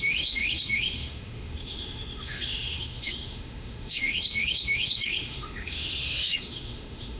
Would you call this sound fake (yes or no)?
yes